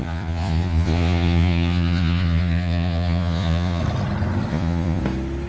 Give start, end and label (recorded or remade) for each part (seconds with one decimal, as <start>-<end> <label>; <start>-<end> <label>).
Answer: 0.0-3.8 remade; 3.8-4.5 recorded; 4.5-5.0 remade; 5.0-5.5 recorded